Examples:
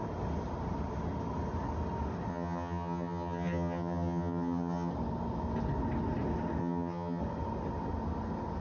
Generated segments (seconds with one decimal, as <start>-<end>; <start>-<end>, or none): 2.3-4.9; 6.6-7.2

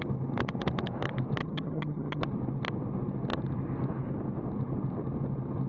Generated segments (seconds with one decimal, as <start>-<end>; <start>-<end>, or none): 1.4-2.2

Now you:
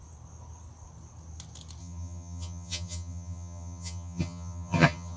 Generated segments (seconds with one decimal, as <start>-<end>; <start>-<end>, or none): 1.8-5.2

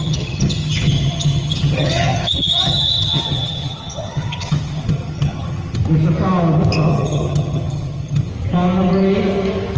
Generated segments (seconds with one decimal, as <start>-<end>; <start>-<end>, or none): 0.0-5.8; 6.9-8.3

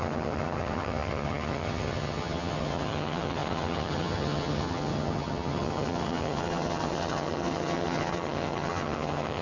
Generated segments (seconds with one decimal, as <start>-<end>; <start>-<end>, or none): 0.0-9.4

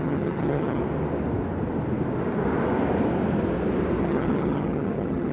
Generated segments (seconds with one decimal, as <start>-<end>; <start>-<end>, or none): 0.0-0.8; 4.0-5.3

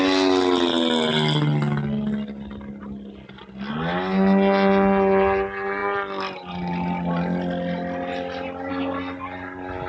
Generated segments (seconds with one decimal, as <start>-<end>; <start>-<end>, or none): none

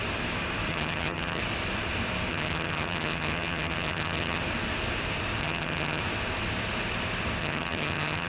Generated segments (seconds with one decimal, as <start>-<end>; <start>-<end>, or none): 0.7-1.4; 2.3-4.4; 5.4-6.0; 7.4-8.3